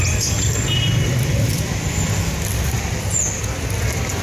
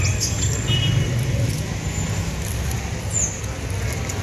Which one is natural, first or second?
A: second